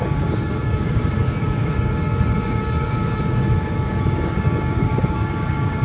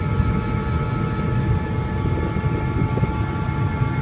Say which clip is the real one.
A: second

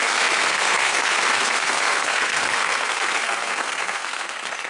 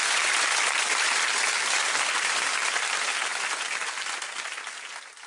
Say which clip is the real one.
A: second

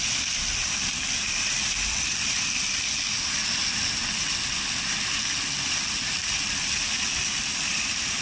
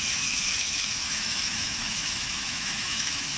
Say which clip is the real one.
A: first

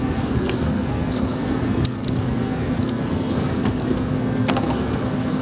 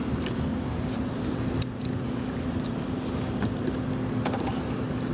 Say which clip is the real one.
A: second